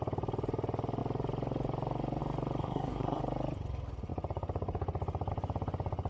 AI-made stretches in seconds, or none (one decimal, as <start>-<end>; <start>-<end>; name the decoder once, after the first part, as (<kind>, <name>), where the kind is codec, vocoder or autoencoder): 2.6-3.2 (codec, SNAC)